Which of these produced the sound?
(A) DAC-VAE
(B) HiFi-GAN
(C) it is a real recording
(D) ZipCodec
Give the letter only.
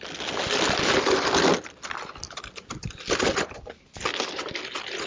C